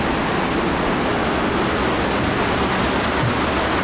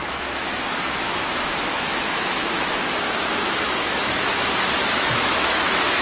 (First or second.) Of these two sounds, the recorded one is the first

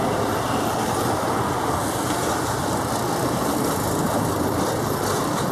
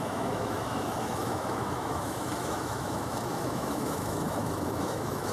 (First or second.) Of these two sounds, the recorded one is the first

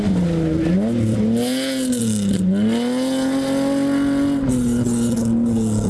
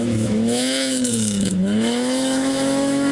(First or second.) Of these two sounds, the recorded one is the first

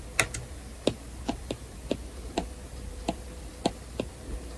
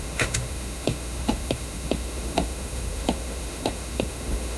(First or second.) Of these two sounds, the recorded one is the first